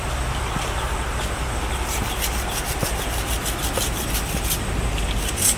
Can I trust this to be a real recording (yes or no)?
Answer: yes